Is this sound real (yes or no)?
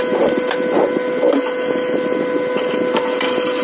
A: yes